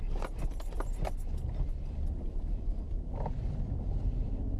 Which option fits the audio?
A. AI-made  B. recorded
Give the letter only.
A